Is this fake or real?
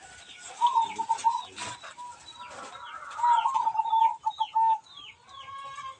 real